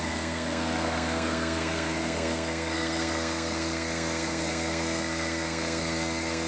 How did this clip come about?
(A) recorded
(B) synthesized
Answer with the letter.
B